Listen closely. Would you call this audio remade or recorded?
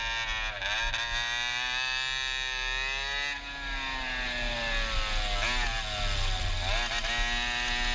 recorded